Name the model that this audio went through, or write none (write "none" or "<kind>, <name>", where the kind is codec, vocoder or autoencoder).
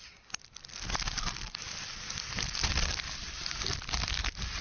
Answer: none